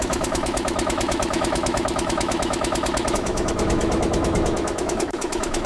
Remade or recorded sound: remade